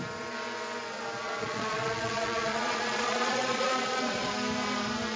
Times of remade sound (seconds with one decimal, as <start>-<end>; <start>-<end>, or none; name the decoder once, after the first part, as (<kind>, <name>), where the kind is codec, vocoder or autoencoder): 1.2-4.3 (vocoder, Vocos)